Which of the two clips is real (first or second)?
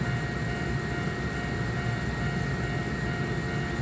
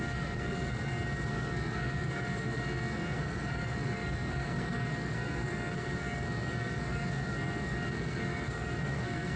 first